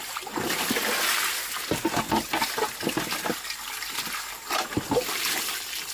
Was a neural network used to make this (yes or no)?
no